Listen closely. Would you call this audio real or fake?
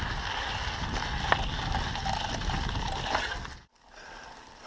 real